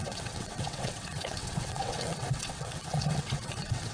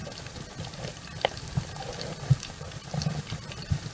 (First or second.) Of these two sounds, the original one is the second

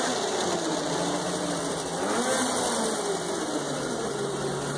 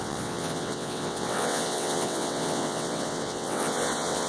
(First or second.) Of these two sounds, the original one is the first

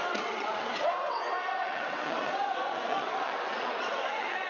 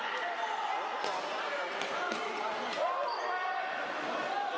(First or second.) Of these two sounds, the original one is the second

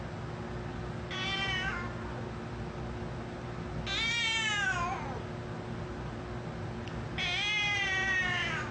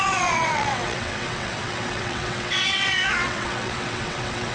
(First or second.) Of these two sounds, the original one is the first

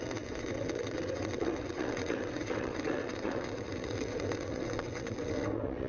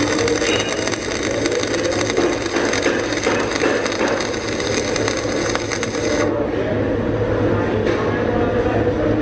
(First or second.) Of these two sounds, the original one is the second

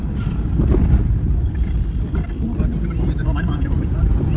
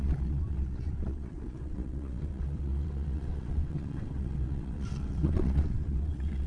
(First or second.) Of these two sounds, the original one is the first